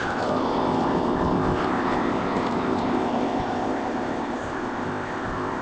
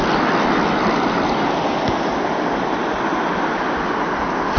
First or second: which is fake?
first